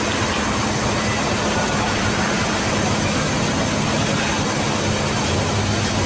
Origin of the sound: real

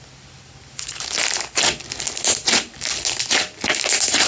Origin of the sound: real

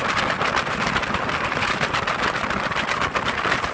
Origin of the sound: real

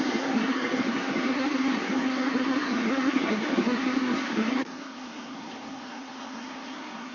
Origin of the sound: fake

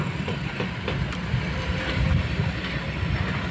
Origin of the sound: real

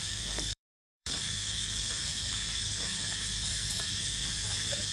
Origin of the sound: fake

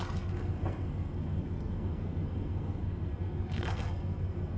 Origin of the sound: fake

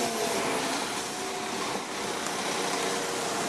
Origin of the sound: real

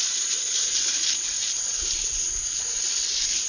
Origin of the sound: real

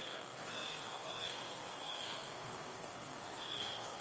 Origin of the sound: fake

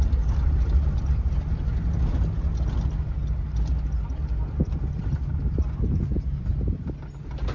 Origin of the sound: real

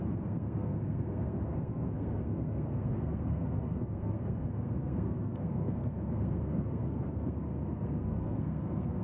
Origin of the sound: fake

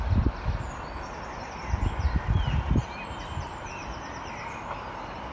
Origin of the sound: real